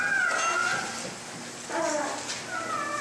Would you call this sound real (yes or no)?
yes